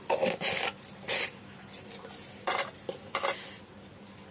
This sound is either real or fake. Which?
real